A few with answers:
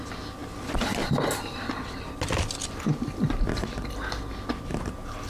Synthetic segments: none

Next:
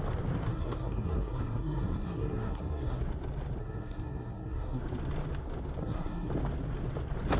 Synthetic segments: 0.5-3.0 (codec, SNAC); 3.6-4.8; 5.8-6.3

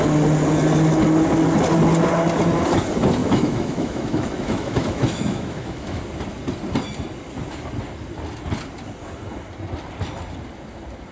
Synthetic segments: 3.2-6.0 (autoencoder, DAC-VAE)

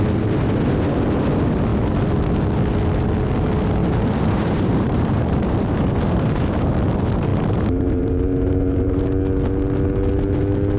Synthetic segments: 3.8-6.7 (vocoder, BigVGAN v2); 7.3-9.0

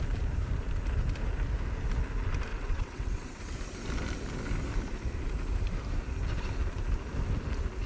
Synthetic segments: 2.5-3.4 (vocoder, WaveNeXt)

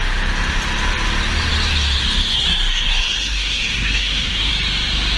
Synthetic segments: 2.3-4.5 (codec, SNAC)

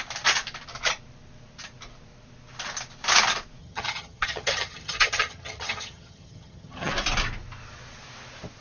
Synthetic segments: 3.6-6.9 (vocoder, HiFi-GAN)